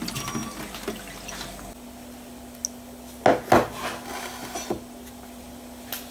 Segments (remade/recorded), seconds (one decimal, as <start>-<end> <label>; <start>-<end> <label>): 0.0-6.1 recorded